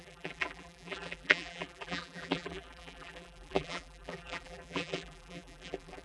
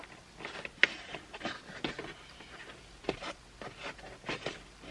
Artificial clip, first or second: first